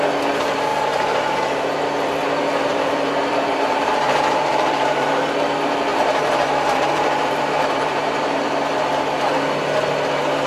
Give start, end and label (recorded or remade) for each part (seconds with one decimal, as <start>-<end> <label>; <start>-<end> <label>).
0.0-2.7 recorded; 2.7-5.1 remade; 5.1-5.9 recorded; 5.9-9.5 remade; 9.5-10.5 recorded